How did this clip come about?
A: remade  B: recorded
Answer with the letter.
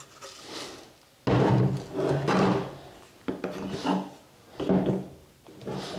B